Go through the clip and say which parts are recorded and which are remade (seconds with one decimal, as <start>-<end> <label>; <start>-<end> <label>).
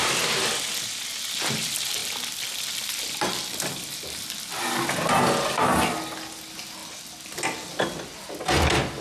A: 0.0-9.0 recorded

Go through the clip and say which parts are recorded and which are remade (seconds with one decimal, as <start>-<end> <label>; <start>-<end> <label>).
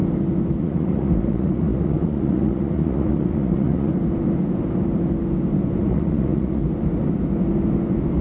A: 0.0-0.6 recorded; 0.6-3.9 remade; 3.9-5.8 recorded; 5.8-6.6 remade; 6.6-8.2 recorded